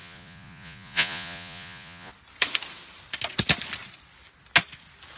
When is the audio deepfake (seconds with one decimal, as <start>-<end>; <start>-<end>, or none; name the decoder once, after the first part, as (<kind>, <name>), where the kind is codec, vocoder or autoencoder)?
0.0-2.1 (vocoder, Vocos)